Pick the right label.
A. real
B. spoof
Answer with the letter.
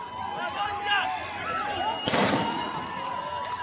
A